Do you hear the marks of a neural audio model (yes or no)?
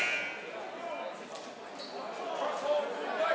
no